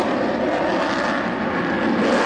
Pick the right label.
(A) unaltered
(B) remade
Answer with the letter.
A